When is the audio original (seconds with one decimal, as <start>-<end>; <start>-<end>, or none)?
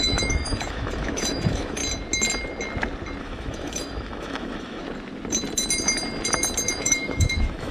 1.8-3.2; 4.8-6.7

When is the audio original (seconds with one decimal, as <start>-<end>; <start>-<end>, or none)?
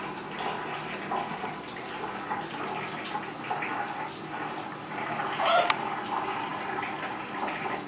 0.0-7.9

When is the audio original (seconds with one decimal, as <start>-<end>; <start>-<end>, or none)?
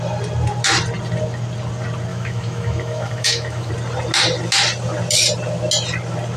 0.0-2.1; 3.7-6.4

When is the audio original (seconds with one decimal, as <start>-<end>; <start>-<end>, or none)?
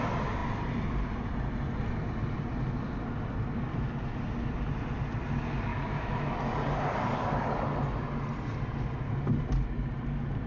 0.0-5.7; 6.3-10.5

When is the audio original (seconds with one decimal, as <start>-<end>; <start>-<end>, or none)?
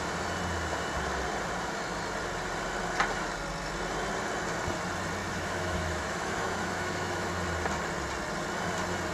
0.0-5.2; 7.3-9.1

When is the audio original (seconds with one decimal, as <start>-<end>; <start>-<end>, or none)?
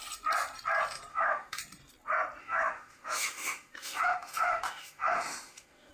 0.0-1.1; 1.6-2.4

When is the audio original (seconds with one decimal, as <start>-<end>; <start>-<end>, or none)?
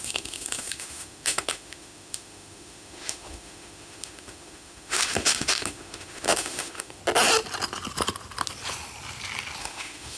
7.0-9.6